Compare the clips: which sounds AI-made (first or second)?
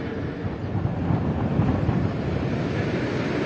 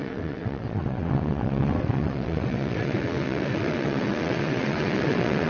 second